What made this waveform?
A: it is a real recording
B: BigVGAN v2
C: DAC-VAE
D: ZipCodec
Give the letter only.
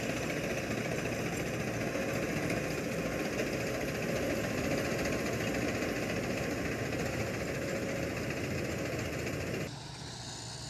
A